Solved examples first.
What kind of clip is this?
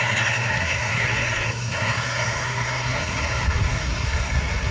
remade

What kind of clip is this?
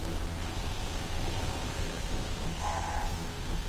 remade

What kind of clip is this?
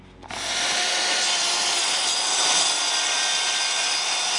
recorded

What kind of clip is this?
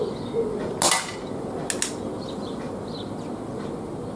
recorded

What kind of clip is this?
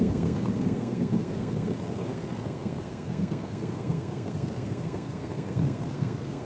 remade